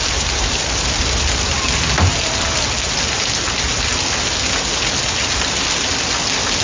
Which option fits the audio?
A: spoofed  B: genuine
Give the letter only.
B